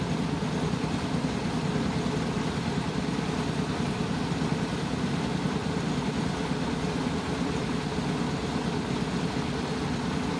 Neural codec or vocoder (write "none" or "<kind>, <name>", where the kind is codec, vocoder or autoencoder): none